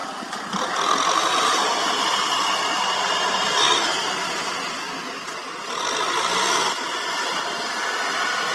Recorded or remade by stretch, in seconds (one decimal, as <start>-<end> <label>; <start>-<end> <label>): 0.0-8.5 recorded